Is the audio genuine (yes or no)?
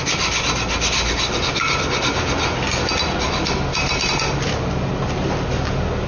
yes